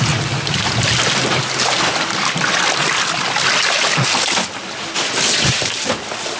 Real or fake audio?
real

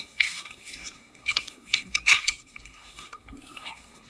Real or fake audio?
fake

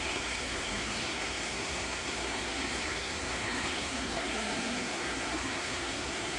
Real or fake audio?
fake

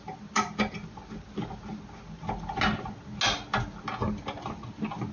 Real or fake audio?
real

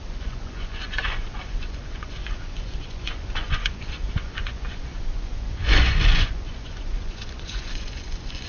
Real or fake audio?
fake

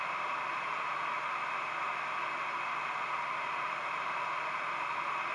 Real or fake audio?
real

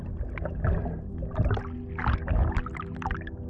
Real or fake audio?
real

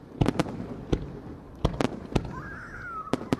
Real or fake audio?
real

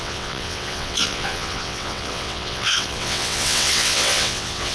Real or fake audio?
fake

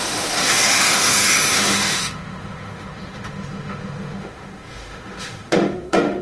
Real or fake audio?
fake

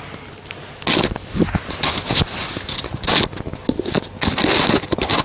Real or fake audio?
real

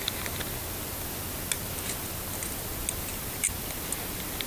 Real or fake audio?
real